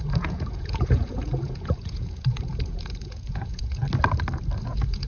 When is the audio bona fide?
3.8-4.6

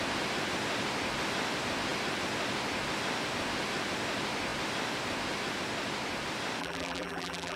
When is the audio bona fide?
0.0-6.6

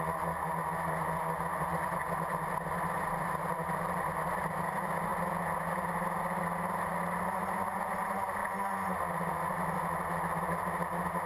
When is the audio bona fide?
0.0-11.3

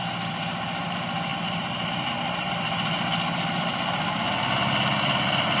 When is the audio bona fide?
0.0-5.6